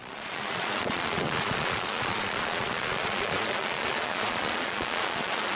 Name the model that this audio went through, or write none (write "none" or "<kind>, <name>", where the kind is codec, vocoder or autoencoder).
vocoder, Vocos